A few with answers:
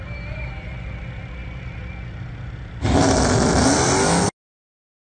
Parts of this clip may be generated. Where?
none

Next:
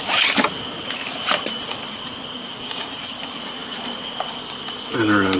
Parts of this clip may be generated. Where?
2.3-2.9 (codec, DAC)

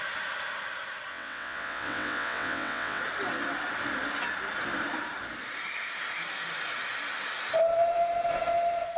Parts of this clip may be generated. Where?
1.1-3.0 (vocoder, WaveNeXt)

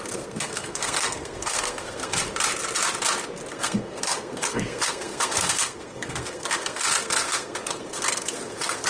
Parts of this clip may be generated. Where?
0.0-2.1 (codec, SNAC); 3.5-8.9

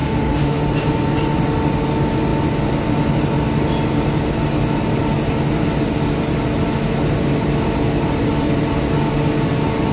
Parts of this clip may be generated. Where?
0.0-0.6 (autoencoder, DAC-VAE)

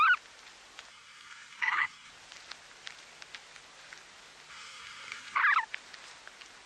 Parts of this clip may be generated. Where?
0.9-2.1 (codec, SNAC); 4.5-5.4

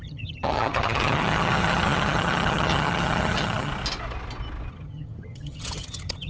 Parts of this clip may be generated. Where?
0.0-3.7 (vocoder, HiFi-GAN); 4.7-6.3